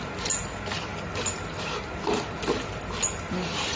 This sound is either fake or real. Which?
real